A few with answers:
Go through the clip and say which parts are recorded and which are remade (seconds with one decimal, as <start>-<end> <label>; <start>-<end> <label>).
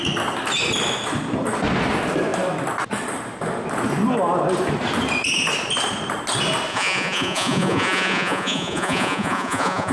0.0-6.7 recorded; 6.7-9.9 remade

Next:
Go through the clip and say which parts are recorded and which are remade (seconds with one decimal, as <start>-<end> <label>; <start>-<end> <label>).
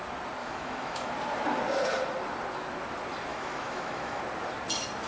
0.0-0.4 recorded; 0.4-1.1 remade; 1.1-3.3 recorded; 3.3-4.2 remade; 4.2-5.1 recorded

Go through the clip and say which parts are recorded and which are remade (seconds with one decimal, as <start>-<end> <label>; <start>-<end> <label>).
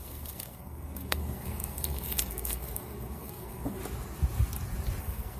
0.0-3.8 remade; 3.8-5.0 recorded; 5.0-5.4 remade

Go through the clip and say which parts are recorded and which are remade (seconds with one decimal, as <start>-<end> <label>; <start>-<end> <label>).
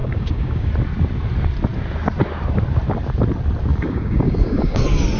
0.0-0.7 remade; 0.7-3.7 recorded; 3.7-4.8 remade; 4.8-5.2 recorded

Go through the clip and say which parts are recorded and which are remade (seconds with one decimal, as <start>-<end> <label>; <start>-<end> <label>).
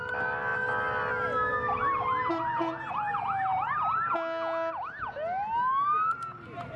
0.0-6.8 recorded